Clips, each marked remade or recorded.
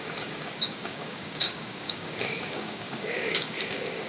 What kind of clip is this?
remade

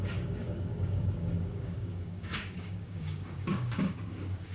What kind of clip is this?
remade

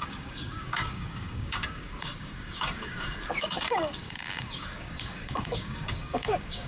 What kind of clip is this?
remade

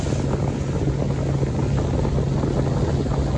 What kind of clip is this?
recorded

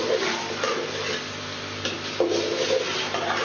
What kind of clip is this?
recorded